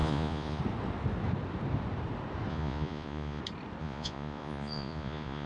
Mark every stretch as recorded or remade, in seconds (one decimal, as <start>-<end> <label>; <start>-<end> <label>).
0.0-0.6 remade; 0.6-2.5 recorded; 2.5-3.4 remade; 3.4-3.8 recorded; 3.8-5.5 remade